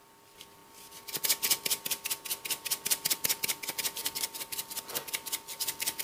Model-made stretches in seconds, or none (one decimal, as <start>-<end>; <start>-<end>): none